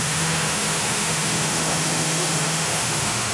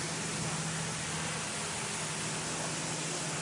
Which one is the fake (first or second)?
first